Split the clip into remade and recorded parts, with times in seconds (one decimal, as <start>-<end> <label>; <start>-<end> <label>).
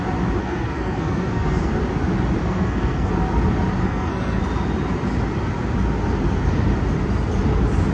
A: 0.0-0.4 recorded; 0.4-1.7 remade; 1.7-2.4 recorded; 2.4-3.1 remade; 3.1-3.8 recorded; 3.8-4.4 remade; 4.4-7.9 recorded